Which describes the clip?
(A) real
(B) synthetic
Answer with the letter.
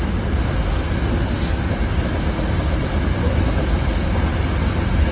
A